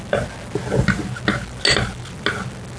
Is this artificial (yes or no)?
no